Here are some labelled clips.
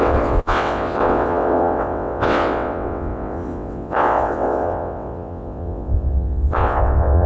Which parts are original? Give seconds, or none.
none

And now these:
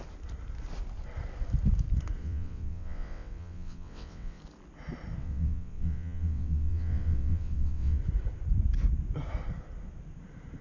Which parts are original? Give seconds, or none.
0.0-2.2; 4.4-5.2; 8.0-10.6